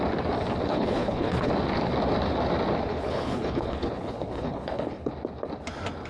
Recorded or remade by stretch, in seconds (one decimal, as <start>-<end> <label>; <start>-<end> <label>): 0.0-0.7 recorded; 0.7-1.5 remade; 1.5-2.9 recorded; 2.9-5.1 remade; 5.1-6.1 recorded